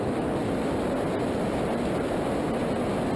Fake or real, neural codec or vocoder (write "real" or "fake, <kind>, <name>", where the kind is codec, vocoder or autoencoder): real